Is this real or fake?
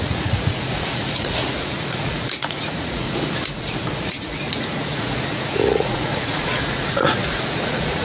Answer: fake